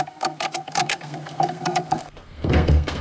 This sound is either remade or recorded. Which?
remade